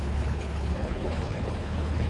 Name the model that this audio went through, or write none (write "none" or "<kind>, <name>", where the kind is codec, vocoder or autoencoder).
codec, HILCodec